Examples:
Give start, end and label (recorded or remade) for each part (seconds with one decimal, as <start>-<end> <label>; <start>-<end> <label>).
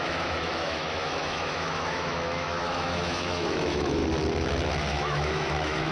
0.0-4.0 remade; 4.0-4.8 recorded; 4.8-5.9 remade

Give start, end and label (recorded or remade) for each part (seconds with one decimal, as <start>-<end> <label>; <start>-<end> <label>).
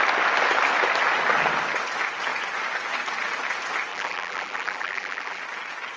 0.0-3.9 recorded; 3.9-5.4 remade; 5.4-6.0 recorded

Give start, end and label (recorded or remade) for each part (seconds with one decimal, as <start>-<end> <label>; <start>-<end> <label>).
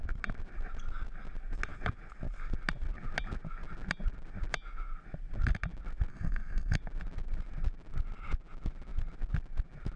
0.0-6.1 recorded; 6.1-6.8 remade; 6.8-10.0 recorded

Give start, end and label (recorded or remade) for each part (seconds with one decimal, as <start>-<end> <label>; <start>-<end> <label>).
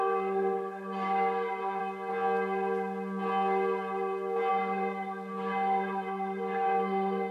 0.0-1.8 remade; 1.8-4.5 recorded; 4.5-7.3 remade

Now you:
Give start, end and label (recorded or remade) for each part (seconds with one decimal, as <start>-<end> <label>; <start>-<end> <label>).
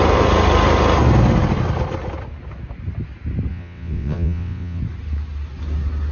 0.0-3.5 recorded; 3.5-4.8 remade; 4.8-6.1 recorded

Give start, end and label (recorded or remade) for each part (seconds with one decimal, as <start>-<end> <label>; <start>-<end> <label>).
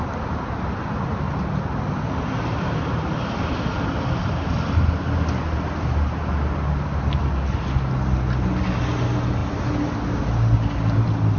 0.0-11.4 recorded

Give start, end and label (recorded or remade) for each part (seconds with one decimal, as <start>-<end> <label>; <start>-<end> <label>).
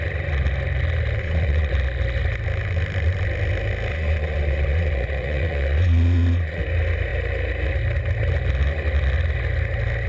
0.0-1.2 recorded; 1.2-1.7 remade; 1.7-3.9 recorded; 3.9-6.6 remade; 6.6-10.1 recorded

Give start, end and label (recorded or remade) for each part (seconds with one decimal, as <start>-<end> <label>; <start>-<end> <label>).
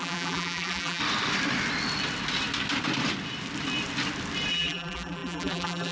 0.0-1.0 remade; 1.0-4.5 recorded; 4.5-5.9 remade